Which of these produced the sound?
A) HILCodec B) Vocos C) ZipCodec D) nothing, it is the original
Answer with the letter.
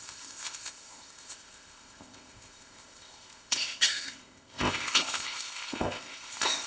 C